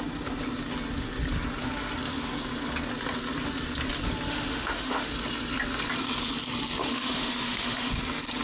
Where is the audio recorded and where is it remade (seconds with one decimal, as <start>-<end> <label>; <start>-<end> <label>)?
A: 0.0-4.3 recorded; 4.3-5.1 remade; 5.1-6.8 recorded; 6.8-7.9 remade; 7.9-8.4 recorded